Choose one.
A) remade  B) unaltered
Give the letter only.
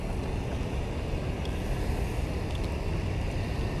B